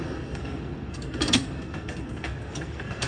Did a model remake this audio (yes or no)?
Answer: yes